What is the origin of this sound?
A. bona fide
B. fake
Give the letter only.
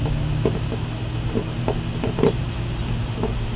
A